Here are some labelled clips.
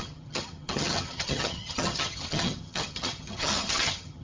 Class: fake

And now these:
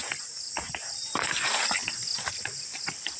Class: real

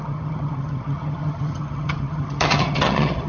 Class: fake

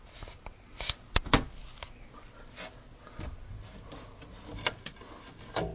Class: real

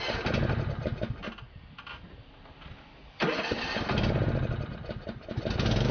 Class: real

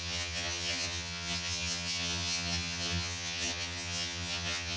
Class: fake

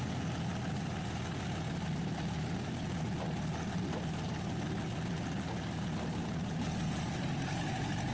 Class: real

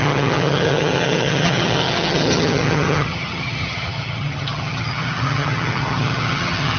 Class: fake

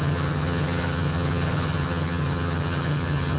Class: fake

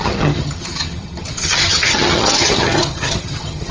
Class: fake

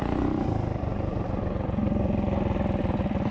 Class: real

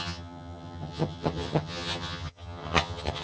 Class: fake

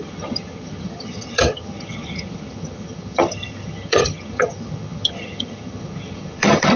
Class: fake